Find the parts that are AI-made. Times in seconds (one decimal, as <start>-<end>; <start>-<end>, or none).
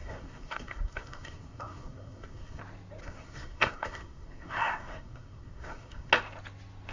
0.0-2.6; 3.0-6.1